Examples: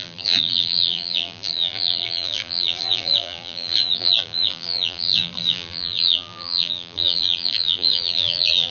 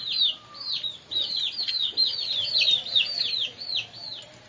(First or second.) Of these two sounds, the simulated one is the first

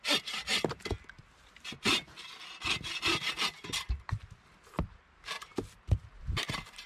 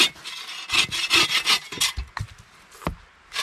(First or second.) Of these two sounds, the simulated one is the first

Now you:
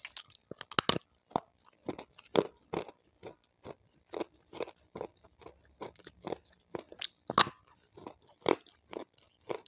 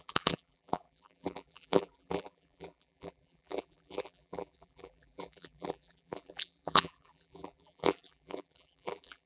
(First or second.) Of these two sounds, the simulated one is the second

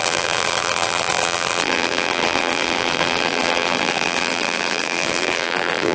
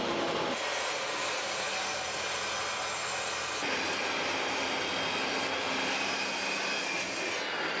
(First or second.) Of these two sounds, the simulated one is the first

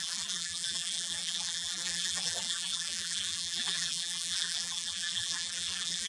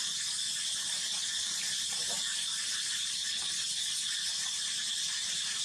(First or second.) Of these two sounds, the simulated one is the first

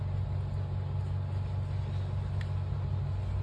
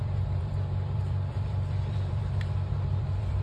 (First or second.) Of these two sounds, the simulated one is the second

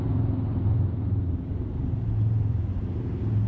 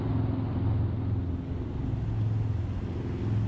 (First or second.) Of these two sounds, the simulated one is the first